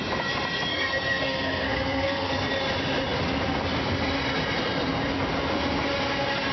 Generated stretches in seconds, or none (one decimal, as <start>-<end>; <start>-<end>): 0.7-2.3